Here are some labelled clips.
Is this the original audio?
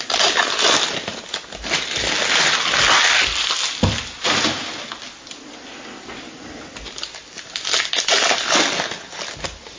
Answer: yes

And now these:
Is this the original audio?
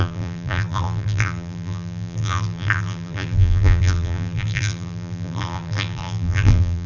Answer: no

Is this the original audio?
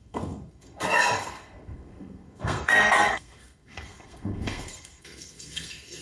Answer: no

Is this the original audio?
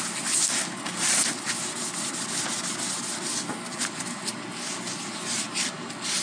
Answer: yes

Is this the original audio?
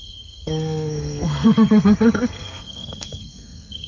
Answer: no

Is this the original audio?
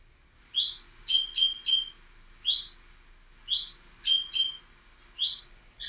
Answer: yes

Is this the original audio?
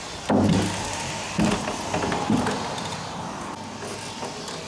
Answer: yes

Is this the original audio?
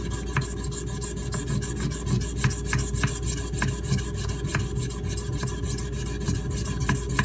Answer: yes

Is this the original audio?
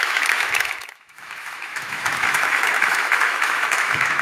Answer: no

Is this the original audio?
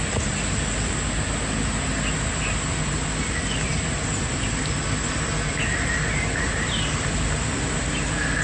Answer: yes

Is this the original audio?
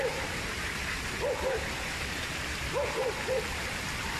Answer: no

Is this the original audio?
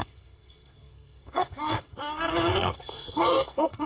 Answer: no